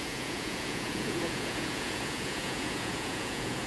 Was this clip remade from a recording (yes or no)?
yes